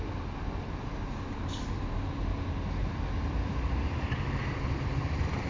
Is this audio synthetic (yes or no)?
no